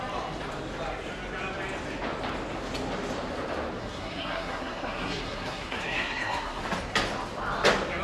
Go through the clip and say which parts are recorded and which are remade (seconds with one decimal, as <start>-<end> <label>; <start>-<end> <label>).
0.0-3.8 recorded; 3.8-6.6 remade; 6.6-8.0 recorded